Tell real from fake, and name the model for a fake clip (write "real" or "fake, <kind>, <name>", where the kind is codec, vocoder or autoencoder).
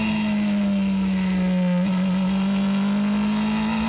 real